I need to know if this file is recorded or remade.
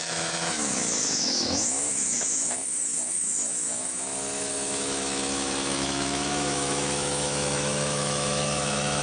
remade